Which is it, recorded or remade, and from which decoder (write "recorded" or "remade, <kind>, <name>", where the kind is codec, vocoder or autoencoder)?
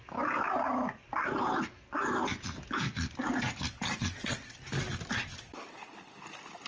recorded